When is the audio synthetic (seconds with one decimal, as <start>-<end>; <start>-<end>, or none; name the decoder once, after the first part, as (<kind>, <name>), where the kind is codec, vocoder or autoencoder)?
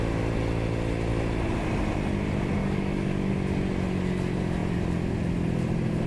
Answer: 2.6-3.3 (codec, DAC)